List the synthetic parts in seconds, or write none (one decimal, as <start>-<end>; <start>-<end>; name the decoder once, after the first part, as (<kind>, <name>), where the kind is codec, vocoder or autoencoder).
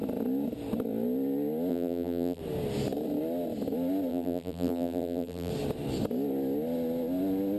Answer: 1.7-2.4 (vocoder, BigVGAN v2); 4.1-5.5